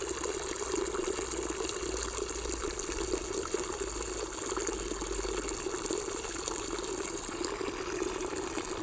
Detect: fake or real real